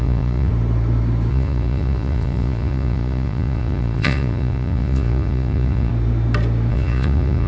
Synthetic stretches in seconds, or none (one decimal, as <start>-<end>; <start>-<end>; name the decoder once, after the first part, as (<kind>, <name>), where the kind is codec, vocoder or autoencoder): 0.0-0.5 (vocoder, Vocos); 1.3-5.9; 6.7-7.5